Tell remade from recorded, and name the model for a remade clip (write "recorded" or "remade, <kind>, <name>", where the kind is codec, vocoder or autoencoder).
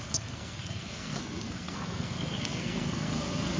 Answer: remade, codec, SNAC